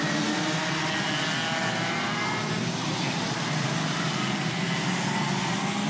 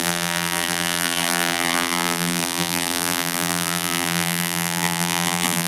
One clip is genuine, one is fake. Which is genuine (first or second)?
first